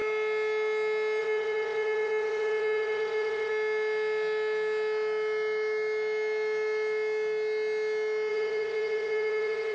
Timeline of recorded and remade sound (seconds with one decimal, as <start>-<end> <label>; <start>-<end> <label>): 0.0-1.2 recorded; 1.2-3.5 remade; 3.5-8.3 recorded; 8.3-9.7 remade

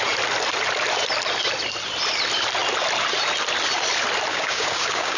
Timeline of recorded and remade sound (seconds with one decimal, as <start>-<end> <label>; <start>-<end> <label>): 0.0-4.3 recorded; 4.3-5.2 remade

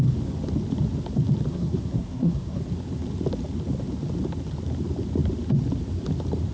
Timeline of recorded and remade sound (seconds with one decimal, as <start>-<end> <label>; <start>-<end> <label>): 0.0-1.5 recorded; 1.5-2.6 remade; 2.6-6.5 recorded

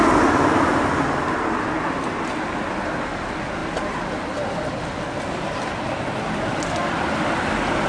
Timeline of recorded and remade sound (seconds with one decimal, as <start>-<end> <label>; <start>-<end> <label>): 0.0-7.9 recorded

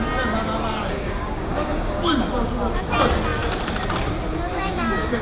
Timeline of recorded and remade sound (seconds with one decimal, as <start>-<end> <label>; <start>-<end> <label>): 0.0-0.8 recorded; 0.8-2.1 remade; 2.1-4.5 recorded; 4.5-5.2 remade

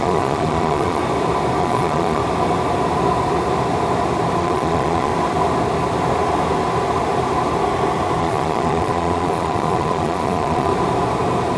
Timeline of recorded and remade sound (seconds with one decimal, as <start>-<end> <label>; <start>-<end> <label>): 0.0-1.0 remade; 1.0-1.6 recorded; 1.6-2.2 remade; 2.2-4.4 recorded; 4.4-5.1 remade; 5.1-8.2 recorded; 8.2-10.7 remade; 10.7-11.6 recorded

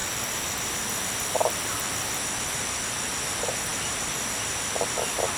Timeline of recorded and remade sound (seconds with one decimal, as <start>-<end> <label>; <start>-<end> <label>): 0.0-5.4 recorded

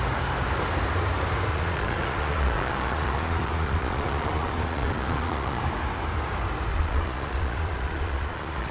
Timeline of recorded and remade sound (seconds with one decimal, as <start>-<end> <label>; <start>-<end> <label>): 0.0-1.5 recorded; 1.5-5.6 remade; 5.6-6.7 recorded; 6.7-8.7 remade